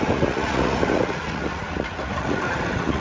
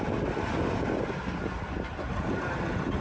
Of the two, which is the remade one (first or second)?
first